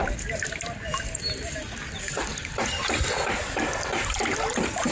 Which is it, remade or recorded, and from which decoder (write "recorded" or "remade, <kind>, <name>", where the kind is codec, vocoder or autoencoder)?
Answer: recorded